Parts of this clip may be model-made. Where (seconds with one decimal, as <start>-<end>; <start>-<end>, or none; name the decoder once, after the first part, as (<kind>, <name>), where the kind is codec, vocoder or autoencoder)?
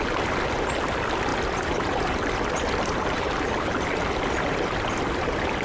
none